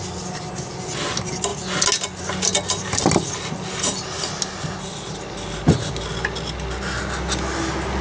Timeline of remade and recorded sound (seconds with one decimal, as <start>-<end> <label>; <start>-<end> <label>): 0.0-8.0 recorded